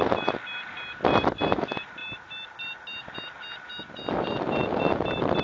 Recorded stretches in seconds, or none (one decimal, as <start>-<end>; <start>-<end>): 0.0-5.4